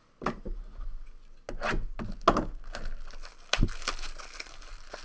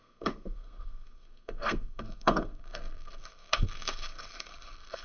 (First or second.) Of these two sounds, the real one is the first